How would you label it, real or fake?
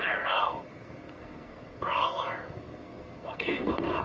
fake